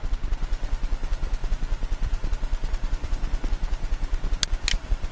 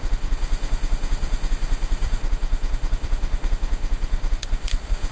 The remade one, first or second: second